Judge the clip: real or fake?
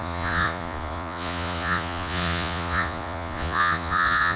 fake